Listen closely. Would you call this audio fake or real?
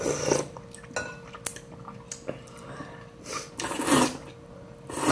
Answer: real